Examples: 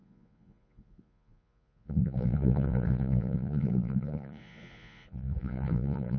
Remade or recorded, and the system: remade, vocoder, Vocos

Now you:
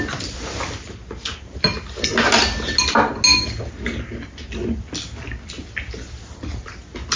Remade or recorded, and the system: recorded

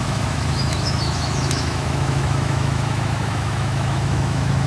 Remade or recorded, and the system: remade, autoencoder, DAC-VAE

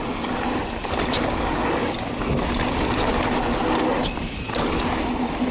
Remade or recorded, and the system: recorded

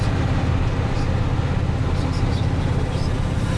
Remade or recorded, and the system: recorded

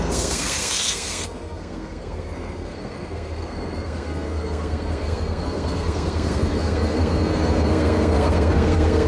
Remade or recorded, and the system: remade, codec, SNAC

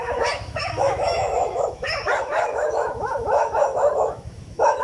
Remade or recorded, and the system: remade, autoencoder, DAC-VAE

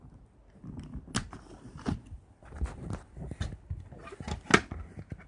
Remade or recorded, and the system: recorded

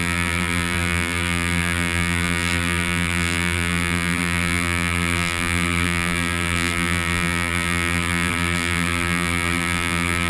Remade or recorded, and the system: remade, vocoder, BigVGAN v2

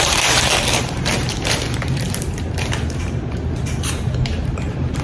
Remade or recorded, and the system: remade, vocoder, BigVGAN v2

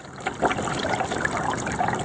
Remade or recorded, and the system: recorded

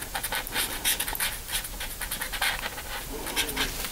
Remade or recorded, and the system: recorded